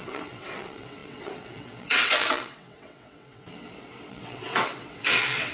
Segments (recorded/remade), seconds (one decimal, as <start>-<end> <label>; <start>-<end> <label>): 0.0-5.5 remade